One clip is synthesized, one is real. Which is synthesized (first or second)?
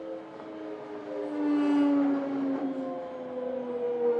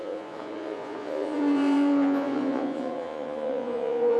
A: second